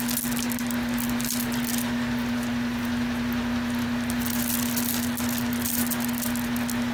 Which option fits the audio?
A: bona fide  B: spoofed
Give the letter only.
A